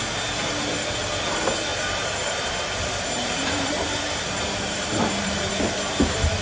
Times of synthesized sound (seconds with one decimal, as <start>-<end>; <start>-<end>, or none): 1.7-5.5